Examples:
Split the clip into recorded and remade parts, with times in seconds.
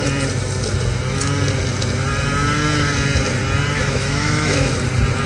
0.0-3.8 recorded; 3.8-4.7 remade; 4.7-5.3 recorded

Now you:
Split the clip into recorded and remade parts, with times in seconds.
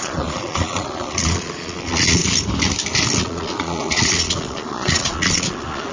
0.0-2.2 remade; 2.2-3.2 recorded; 3.2-5.9 remade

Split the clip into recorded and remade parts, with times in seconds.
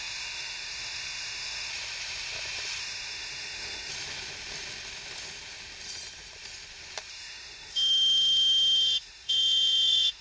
0.0-1.7 remade; 1.7-2.8 recorded; 2.8-3.9 remade; 3.9-7.1 recorded; 7.1-10.2 remade